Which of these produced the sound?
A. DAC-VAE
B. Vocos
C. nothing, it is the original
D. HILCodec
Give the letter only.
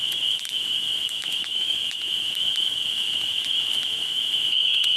A